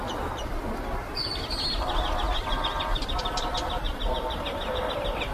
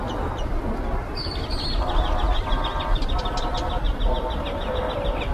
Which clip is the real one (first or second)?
second